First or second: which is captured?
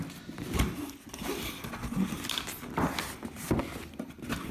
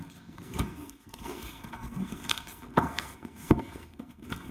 first